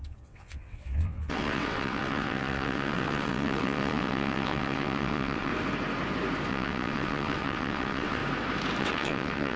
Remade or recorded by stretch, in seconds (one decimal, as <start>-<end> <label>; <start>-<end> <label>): 0.0-5.5 remade; 5.5-6.5 recorded; 6.5-8.2 remade; 8.2-8.8 recorded; 8.8-9.6 remade